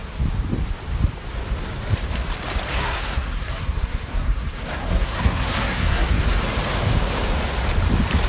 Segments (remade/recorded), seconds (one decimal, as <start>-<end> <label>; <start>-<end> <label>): 0.0-2.7 recorded; 2.7-6.2 remade; 6.2-8.3 recorded